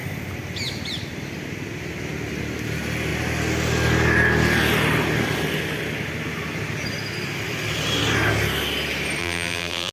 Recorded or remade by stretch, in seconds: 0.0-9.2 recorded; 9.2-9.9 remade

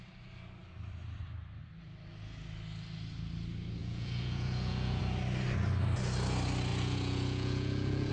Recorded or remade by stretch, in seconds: 0.0-3.8 recorded; 3.8-5.0 remade; 5.0-6.7 recorded; 6.7-8.1 remade

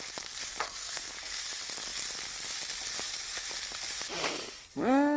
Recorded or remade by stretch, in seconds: 0.0-0.5 recorded; 0.5-1.1 remade; 1.1-5.2 recorded

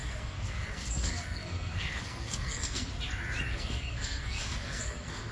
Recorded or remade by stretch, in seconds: 0.0-2.9 remade; 2.9-3.5 recorded; 3.5-5.3 remade

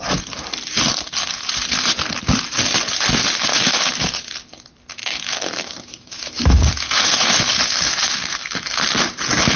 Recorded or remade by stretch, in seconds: 0.0-3.5 recorded; 3.5-4.3 remade; 4.3-5.0 recorded; 5.0-8.8 remade; 8.8-9.6 recorded

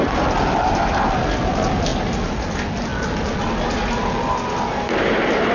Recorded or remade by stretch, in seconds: 0.0-5.5 recorded

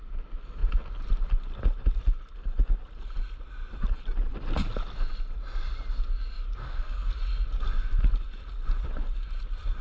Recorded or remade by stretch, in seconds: 0.0-6.6 recorded; 6.6-7.1 remade; 7.1-9.8 recorded

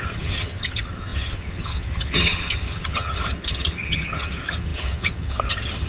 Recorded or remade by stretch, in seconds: 0.0-5.9 remade